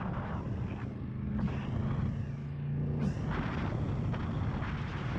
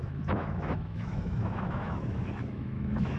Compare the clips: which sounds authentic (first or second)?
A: first